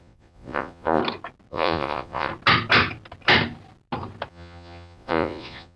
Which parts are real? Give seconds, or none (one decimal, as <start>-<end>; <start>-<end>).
1.0-1.5; 2.3-4.3